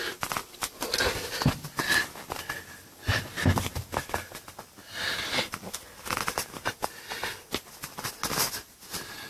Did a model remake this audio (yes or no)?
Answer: no